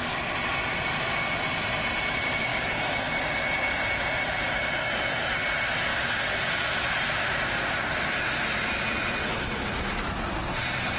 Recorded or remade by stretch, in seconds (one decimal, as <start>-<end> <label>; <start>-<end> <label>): 0.0-11.0 recorded